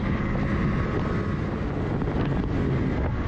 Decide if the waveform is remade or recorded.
recorded